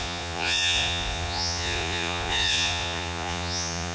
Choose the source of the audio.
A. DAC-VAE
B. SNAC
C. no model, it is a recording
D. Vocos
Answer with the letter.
D